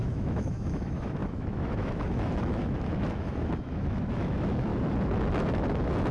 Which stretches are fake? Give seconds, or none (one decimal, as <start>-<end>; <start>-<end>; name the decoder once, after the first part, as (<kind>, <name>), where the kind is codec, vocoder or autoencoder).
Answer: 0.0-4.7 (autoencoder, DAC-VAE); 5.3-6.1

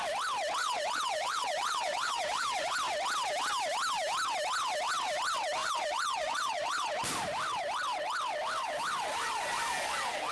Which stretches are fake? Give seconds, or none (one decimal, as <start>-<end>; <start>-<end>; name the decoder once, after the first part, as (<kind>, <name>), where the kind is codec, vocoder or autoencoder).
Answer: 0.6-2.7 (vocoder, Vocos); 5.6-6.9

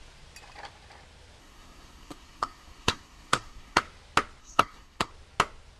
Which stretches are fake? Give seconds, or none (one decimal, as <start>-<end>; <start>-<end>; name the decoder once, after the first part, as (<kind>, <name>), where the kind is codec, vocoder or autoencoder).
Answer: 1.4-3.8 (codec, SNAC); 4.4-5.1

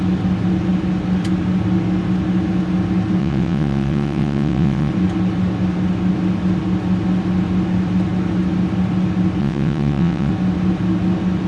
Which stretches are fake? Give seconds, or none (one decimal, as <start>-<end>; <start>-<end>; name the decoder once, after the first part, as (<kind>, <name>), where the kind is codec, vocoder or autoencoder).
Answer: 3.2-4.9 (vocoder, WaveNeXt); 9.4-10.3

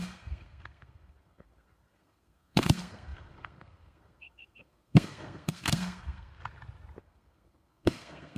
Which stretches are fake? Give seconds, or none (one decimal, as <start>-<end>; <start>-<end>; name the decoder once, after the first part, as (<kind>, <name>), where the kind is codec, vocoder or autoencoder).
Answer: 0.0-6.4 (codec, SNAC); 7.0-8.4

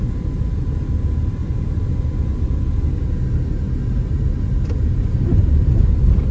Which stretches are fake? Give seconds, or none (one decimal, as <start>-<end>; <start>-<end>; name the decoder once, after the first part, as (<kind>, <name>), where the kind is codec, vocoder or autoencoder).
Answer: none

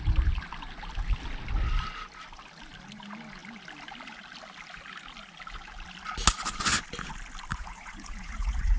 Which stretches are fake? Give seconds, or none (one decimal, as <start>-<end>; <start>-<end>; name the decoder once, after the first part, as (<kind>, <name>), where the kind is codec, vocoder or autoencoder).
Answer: 7.5-8.8 (vocoder, Vocos)